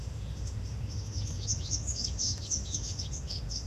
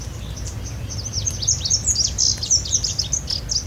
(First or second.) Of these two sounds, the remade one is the first